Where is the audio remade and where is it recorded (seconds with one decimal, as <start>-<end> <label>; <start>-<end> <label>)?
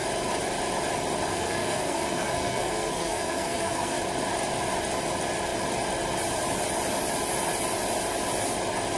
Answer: 0.0-1.3 recorded; 1.3-4.0 remade; 4.0-9.0 recorded